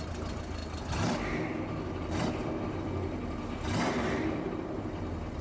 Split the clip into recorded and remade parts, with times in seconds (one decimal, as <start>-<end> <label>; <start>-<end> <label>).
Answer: 0.0-5.4 recorded